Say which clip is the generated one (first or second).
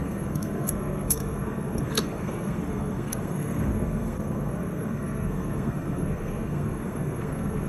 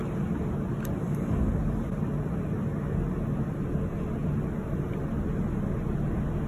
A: first